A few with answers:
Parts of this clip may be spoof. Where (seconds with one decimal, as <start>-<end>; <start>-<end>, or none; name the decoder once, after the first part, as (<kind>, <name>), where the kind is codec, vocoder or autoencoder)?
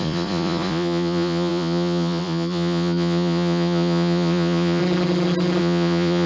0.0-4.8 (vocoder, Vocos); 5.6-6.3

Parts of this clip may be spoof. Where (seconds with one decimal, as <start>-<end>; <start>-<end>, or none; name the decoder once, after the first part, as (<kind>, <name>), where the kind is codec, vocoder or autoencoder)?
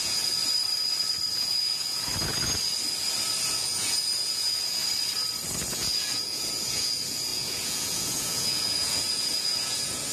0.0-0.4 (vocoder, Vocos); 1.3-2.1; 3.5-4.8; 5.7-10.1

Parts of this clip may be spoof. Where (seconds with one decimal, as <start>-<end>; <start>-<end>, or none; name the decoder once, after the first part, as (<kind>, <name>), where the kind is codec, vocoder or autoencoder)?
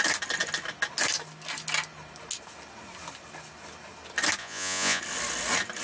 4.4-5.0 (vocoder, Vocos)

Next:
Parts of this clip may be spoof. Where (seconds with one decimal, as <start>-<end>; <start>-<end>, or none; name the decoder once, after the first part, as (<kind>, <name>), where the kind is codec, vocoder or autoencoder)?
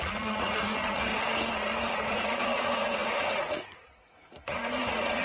0.0-1.1 (vocoder, Vocos); 2.1-5.2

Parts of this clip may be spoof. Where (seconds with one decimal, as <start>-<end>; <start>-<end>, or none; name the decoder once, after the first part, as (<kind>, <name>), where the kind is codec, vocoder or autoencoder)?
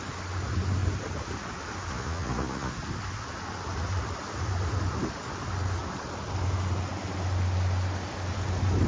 1.9-2.7 (vocoder, Vocos)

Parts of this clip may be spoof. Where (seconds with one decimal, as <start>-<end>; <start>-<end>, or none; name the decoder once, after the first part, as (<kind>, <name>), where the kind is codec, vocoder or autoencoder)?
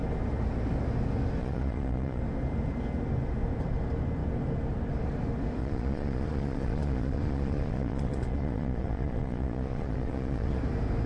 1.4-2.2 (vocoder, Vocos); 5.6-10.6